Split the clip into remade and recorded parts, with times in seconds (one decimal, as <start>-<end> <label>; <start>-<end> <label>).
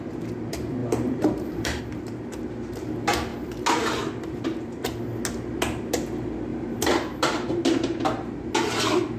0.0-0.8 recorded; 0.8-1.8 remade; 1.8-6.5 recorded; 6.5-8.0 remade; 8.0-9.2 recorded